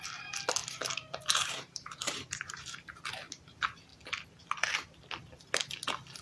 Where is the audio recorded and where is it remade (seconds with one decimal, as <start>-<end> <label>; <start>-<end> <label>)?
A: 0.0-0.6 recorded; 0.6-3.0 remade; 3.0-6.2 recorded